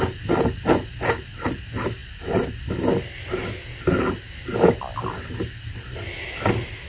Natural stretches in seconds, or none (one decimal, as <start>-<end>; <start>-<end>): 0.0-6.9

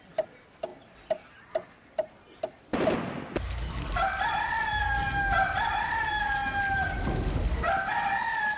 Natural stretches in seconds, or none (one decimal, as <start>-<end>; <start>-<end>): 0.0-8.6

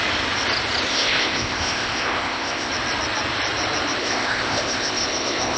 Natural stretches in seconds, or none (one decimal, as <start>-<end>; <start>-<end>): 0.0-0.9; 2.7-4.0